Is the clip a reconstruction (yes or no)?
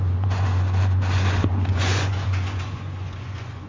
yes